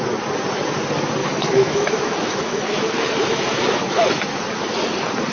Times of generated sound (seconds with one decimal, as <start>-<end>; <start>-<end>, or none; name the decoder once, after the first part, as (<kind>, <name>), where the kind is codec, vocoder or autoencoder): 1.2-4.4 (autoencoder, DAC-VAE)